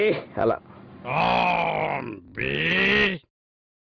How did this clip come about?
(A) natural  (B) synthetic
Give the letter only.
A